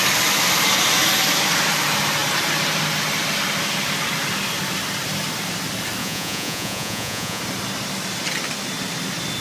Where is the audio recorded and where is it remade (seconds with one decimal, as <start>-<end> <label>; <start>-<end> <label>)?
0.0-6.0 recorded; 6.0-7.4 remade; 7.4-9.4 recorded